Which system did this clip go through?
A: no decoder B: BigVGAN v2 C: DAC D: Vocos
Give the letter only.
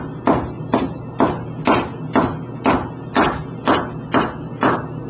A